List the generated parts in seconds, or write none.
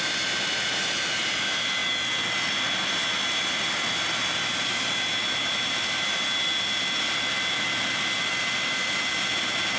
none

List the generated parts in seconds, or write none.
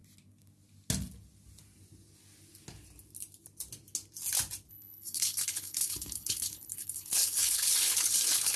4.7-8.6 (codec, HILCodec)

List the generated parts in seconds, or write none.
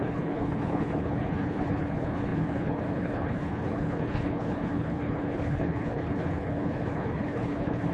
0.0-7.9 (codec, HILCodec)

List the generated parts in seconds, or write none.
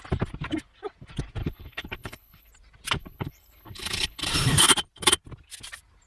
1.4-2.5 (codec, HILCodec); 3.0-4.3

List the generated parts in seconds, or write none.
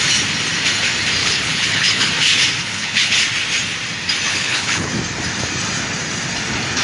1.2-2.1 (codec, HILCodec); 2.6-3.2; 4.3-4.9